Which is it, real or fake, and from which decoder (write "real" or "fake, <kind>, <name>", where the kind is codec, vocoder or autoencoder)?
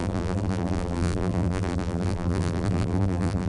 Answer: fake, vocoder, BigVGAN v2